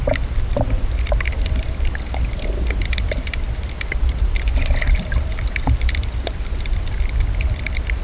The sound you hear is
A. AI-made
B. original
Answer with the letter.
A